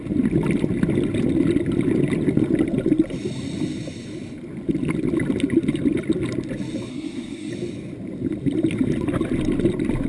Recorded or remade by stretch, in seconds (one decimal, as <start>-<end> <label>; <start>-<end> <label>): 0.0-6.9 recorded; 6.9-7.5 remade; 7.5-10.1 recorded